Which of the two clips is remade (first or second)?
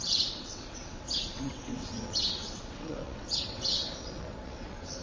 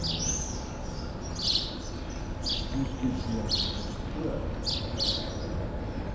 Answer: first